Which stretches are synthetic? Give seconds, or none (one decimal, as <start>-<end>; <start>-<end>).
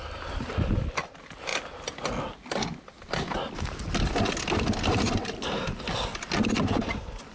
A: none